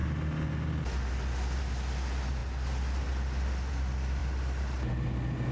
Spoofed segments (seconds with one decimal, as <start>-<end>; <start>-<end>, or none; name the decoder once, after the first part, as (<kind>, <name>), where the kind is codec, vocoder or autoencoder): none